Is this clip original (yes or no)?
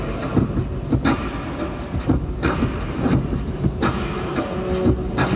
yes